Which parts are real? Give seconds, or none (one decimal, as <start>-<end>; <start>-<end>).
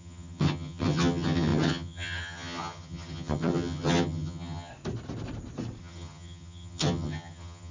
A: 4.7-5.8